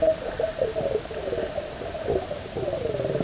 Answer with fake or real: real